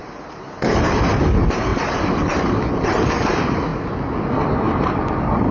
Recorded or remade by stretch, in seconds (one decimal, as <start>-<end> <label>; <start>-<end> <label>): 0.0-1.2 remade; 1.2-1.7 recorded; 1.7-2.5 remade; 2.5-5.5 recorded